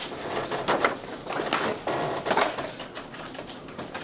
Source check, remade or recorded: remade